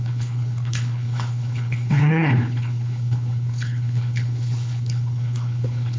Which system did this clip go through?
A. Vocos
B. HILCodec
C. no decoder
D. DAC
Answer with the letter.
B